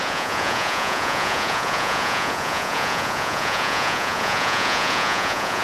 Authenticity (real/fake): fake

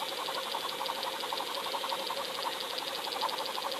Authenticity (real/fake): real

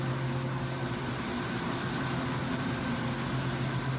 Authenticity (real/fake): real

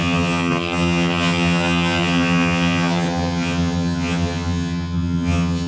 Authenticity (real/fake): fake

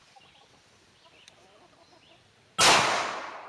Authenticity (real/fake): real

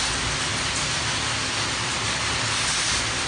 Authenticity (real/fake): real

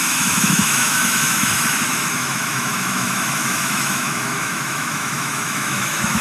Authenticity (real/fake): fake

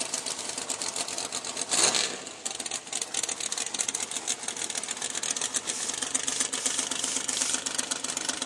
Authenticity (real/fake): real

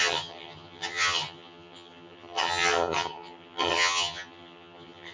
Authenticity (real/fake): fake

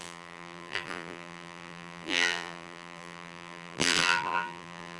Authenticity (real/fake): fake